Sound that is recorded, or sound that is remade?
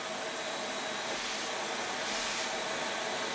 recorded